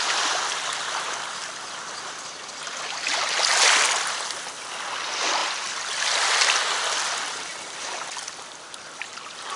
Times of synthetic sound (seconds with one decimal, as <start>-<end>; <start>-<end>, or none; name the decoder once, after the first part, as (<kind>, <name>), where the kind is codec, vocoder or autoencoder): none